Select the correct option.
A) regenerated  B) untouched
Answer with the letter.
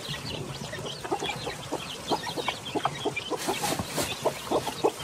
B